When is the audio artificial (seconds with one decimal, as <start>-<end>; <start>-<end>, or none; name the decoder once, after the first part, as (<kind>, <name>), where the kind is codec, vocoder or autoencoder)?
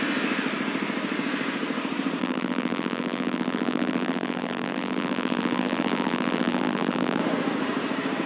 2.2-7.2 (vocoder, BigVGAN v2)